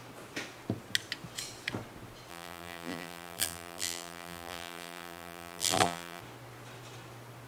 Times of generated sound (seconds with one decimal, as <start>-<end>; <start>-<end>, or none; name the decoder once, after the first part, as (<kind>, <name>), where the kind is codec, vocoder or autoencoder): 2.3-6.2 (vocoder, BigVGAN v2)